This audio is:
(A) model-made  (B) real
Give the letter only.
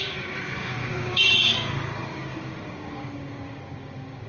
A